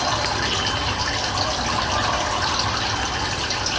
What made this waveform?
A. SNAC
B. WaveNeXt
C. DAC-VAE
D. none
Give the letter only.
D